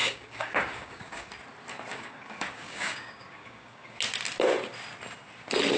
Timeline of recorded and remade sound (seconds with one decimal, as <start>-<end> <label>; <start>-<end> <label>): 0.0-1.3 remade; 1.3-1.9 recorded; 1.9-4.0 remade; 4.0-5.8 recorded

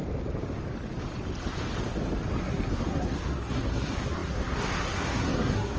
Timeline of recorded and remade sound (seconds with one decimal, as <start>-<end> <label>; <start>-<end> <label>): 0.0-2.4 recorded; 2.4-5.8 remade

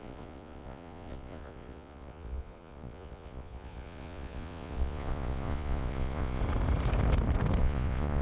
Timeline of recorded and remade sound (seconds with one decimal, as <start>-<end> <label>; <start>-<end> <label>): 0.0-6.4 remade; 6.4-7.6 recorded; 7.6-8.2 remade